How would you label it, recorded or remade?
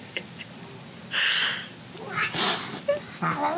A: recorded